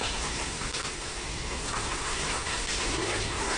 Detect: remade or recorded remade